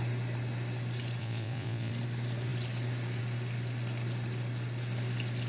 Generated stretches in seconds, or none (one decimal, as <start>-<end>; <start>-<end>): 1.2-1.9